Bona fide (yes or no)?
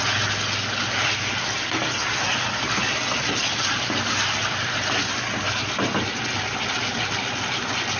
yes